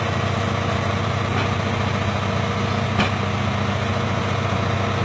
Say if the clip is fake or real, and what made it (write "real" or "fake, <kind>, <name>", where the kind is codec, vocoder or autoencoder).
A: real